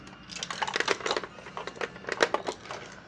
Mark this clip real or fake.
real